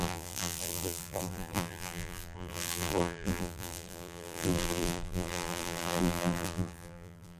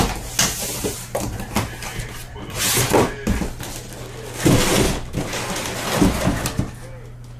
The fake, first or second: first